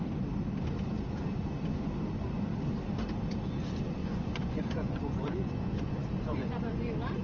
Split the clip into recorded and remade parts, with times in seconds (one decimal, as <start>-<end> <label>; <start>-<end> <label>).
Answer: 0.0-4.0 recorded; 4.0-6.8 remade; 6.8-7.2 recorded